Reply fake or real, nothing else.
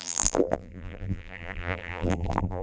fake